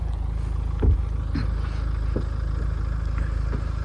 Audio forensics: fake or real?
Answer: real